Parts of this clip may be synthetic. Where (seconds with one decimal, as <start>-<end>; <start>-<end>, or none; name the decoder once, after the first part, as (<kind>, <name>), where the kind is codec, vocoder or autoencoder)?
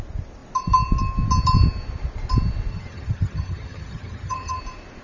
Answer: 2.7-4.6 (vocoder, HiFi-GAN)